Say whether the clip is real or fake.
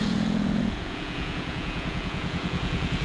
fake